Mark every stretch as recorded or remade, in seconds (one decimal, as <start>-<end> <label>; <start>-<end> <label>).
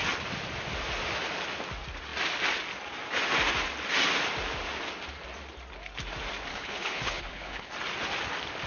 0.0-6.5 recorded; 6.5-7.7 remade; 7.7-8.7 recorded